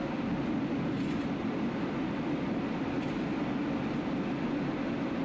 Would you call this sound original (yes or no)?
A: yes